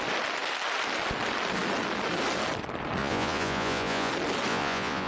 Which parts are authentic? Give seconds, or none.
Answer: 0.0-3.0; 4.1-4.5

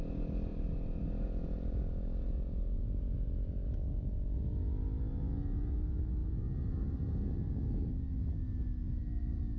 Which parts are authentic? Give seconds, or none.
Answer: 0.0-9.6

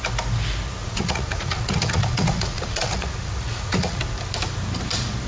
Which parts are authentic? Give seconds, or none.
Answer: 0.0-0.8; 4.0-5.3

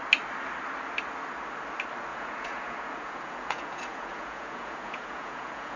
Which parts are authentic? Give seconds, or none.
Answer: 0.0-2.1

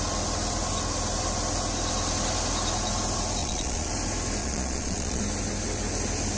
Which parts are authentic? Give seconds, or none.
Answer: 0.0-3.4; 3.9-4.4; 5.2-6.4

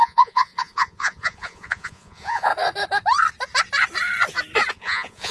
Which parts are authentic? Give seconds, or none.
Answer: 2.5-4.7

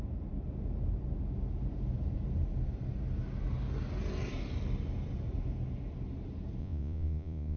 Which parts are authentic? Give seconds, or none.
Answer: 0.0-6.6